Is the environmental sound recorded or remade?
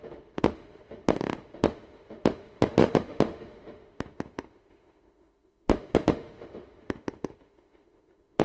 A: remade